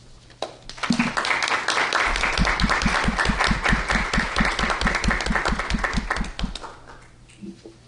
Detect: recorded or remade recorded